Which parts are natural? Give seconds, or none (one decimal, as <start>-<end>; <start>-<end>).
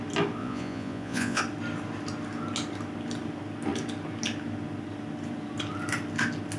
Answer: 0.0-0.4; 1.4-6.6